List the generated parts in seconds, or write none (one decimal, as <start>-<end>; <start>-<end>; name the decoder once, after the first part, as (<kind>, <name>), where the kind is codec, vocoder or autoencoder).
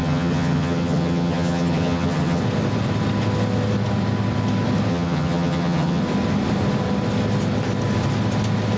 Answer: 0.0-2.4 (vocoder, HiFi-GAN); 4.9-6.0